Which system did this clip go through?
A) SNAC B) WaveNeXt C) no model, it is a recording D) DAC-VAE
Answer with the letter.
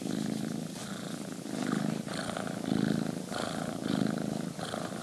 C